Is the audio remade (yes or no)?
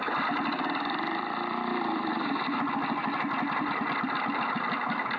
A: yes